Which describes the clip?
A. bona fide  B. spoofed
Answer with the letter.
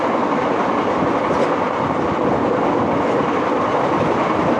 A